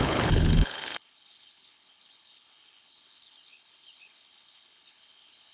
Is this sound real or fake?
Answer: fake